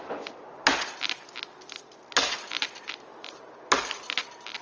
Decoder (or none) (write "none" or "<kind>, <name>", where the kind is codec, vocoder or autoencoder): none